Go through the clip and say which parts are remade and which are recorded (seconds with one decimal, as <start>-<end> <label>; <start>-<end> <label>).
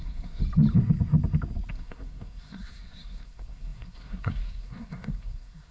0.0-0.4 remade; 0.4-1.7 recorded; 1.7-5.7 remade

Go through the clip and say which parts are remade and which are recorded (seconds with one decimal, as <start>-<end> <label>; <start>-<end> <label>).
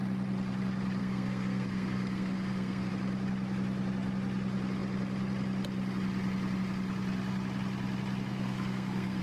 0.0-1.0 recorded; 1.0-2.9 remade; 2.9-8.3 recorded; 8.3-9.2 remade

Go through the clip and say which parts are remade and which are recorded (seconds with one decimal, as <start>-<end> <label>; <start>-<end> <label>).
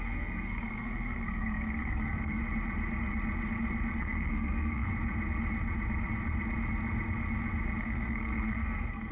0.0-2.4 remade; 2.4-4.0 recorded; 4.0-4.9 remade; 4.9-7.8 recorded; 7.8-9.1 remade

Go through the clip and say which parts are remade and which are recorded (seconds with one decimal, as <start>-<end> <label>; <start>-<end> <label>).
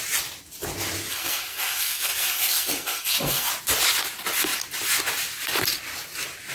0.0-1.1 recorded; 1.1-3.5 remade; 3.5-6.5 recorded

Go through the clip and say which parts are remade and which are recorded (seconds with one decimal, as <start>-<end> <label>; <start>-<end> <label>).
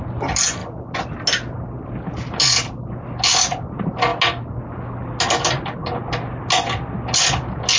0.0-7.8 recorded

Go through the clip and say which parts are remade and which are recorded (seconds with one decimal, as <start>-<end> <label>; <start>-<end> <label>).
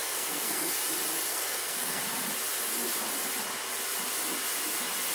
0.0-0.8 remade; 0.8-1.3 recorded; 1.3-2.0 remade; 2.0-5.1 recorded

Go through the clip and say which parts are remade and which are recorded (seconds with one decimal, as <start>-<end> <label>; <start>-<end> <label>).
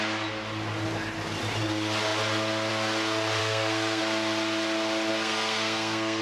0.0-3.4 recorded; 3.4-4.0 remade; 4.0-5.1 recorded; 5.1-6.2 remade